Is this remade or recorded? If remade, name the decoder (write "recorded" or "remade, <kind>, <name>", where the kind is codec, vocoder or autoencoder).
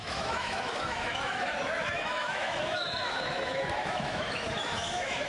remade, autoencoder, DAC-VAE